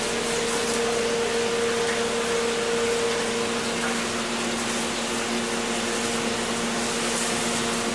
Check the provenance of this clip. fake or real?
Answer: real